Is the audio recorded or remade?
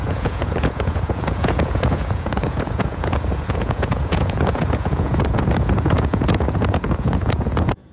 remade